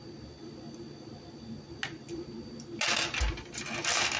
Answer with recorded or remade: recorded